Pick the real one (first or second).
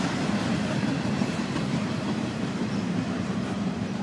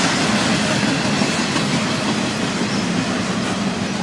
second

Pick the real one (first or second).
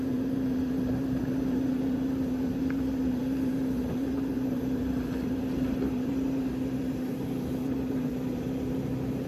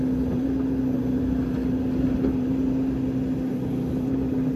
second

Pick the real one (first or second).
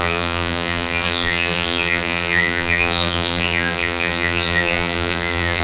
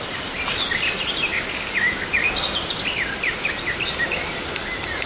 second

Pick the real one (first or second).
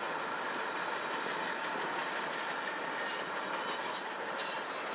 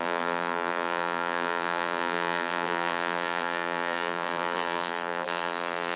first